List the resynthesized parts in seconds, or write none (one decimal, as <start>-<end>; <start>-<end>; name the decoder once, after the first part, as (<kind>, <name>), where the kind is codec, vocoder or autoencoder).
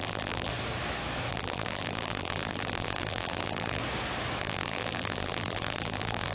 0.0-0.5 (vocoder, BigVGAN v2); 1.3-3.8; 4.4-6.3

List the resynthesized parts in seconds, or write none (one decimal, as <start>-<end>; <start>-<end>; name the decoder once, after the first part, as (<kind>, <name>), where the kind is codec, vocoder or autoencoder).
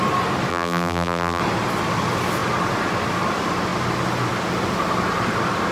0.5-1.4 (vocoder, BigVGAN v2)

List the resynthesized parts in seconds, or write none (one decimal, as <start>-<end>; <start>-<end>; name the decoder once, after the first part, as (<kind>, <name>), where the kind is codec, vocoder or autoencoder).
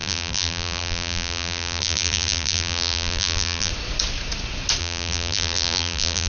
0.0-3.7 (vocoder, BigVGAN v2); 4.8-6.3